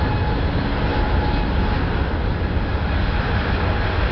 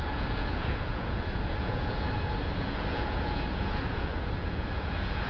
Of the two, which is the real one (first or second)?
first